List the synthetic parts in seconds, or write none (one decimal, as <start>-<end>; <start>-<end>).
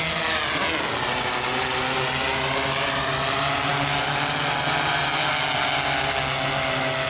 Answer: none